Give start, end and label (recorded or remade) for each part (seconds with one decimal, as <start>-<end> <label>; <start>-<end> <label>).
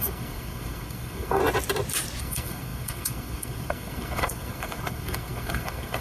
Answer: 0.0-1.4 remade; 1.4-2.2 recorded; 2.2-6.0 remade